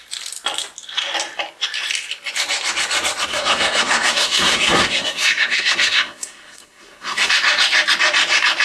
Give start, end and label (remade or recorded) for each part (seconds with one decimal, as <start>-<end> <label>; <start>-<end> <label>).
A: 0.0-3.3 recorded; 3.3-7.3 remade; 7.3-8.6 recorded